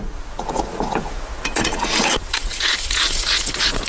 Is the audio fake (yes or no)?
yes